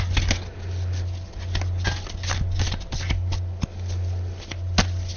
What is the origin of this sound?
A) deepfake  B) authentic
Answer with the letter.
B